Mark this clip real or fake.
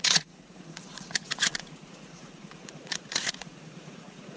fake